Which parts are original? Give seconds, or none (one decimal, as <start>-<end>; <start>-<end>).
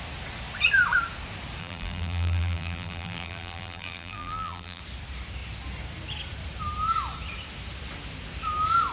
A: 0.0-1.6; 4.8-8.9